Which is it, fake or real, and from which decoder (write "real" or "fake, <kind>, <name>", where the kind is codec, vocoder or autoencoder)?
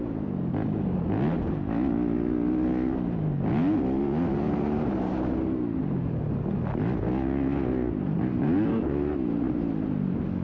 real